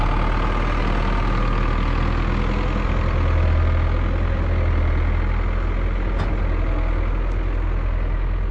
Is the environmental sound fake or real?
real